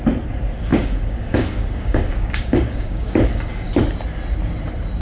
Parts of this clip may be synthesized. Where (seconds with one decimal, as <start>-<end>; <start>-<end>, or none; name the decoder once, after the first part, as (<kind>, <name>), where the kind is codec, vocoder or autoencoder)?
0.7-3.7 (codec, DAC)